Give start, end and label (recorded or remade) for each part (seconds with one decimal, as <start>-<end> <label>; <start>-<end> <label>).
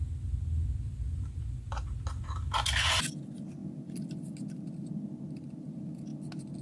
0.0-6.6 recorded